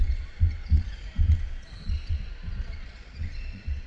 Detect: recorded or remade remade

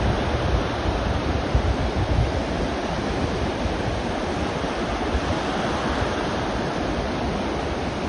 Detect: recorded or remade recorded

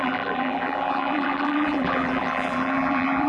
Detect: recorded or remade remade